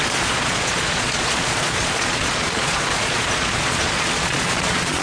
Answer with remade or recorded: remade